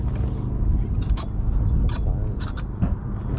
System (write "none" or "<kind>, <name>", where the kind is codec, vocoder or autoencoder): none